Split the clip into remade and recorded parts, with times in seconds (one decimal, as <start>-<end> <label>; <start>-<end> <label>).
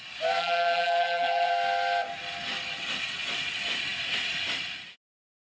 0.0-0.4 recorded; 0.4-1.5 remade; 1.5-5.6 recorded